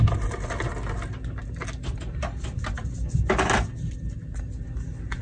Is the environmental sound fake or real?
real